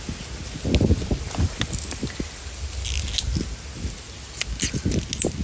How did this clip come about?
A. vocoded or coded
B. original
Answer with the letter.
B